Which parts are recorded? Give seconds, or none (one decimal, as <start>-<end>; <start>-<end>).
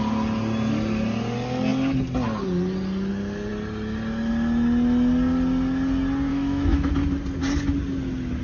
0.0-6.3; 6.9-8.4